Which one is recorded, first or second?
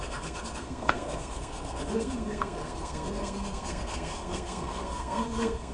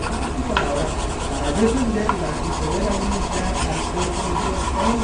second